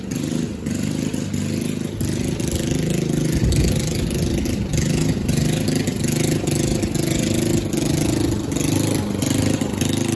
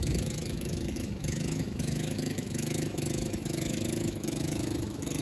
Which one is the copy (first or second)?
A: second